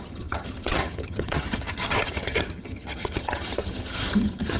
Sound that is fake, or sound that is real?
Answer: fake